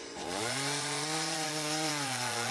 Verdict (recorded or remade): remade